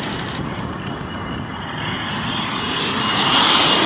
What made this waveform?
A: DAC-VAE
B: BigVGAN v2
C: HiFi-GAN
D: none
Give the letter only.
D